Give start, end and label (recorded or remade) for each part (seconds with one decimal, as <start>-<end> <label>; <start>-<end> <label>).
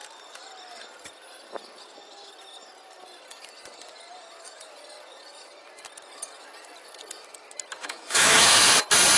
0.0-7.8 recorded; 7.8-8.6 remade; 8.6-9.2 recorded